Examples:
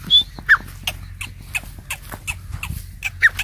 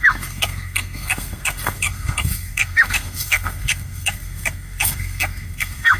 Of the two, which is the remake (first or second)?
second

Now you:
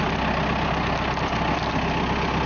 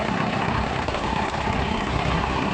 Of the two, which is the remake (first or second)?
second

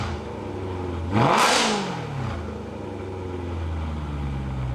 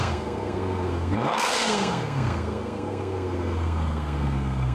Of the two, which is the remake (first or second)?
second